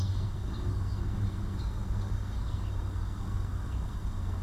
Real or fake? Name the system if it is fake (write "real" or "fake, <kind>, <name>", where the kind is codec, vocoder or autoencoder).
fake, codec, SNAC